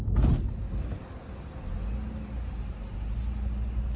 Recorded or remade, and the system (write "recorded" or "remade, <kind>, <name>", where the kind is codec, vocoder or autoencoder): recorded